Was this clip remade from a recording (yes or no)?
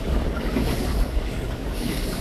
yes